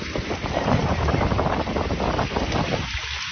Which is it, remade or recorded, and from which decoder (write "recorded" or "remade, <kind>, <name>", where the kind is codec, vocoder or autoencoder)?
recorded